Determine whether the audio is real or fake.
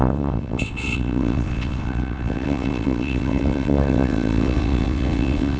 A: fake